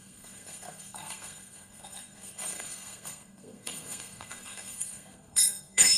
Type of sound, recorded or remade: remade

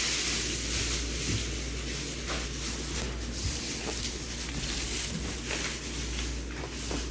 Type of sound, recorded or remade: recorded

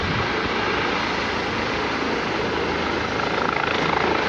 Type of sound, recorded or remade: recorded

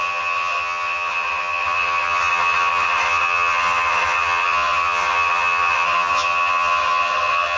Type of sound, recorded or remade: remade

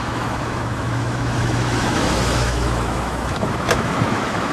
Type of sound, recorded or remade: remade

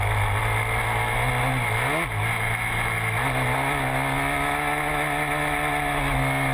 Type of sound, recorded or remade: recorded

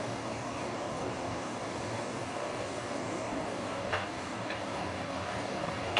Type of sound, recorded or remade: remade